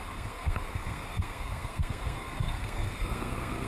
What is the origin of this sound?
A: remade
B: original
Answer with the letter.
A